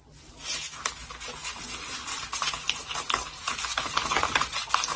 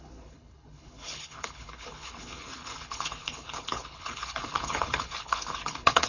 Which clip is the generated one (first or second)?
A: second